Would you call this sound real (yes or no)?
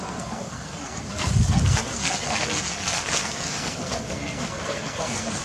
no